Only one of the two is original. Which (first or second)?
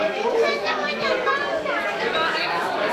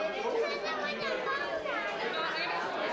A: second